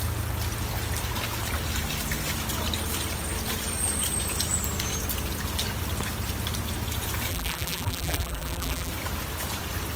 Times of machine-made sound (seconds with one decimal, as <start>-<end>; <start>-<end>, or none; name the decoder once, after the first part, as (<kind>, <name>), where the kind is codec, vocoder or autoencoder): 7.3-8.9 (vocoder, BigVGAN v2)